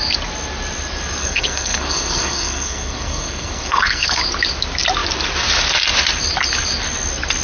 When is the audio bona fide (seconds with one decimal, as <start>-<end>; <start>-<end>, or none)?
0.0-1.2; 4.2-7.4